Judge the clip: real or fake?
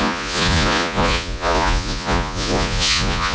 fake